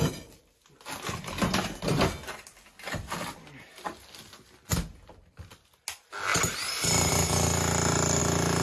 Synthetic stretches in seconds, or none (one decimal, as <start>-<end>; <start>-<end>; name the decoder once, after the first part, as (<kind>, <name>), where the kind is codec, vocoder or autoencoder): none